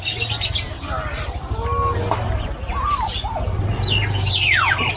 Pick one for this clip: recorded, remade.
recorded